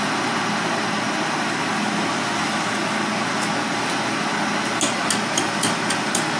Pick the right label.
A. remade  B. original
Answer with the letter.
B